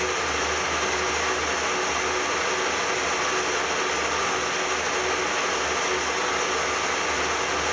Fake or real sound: real